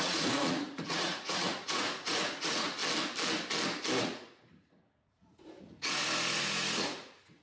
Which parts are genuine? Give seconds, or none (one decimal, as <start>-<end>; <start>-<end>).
2.8-4.0